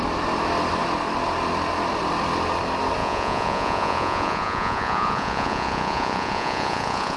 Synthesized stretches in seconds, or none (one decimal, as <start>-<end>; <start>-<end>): 3.0-7.2